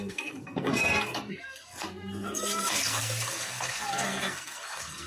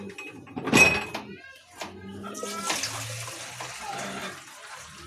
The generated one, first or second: first